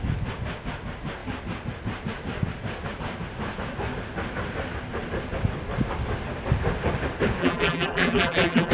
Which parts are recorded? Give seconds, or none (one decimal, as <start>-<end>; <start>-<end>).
0.0-7.4

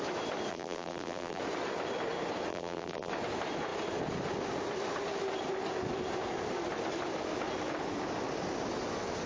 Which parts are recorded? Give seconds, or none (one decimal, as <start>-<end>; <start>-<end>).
0.0-0.5; 1.4-2.5; 3.1-9.3

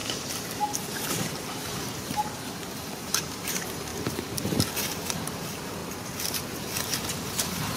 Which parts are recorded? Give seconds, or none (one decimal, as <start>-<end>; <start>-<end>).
3.9-5.1; 5.8-7.1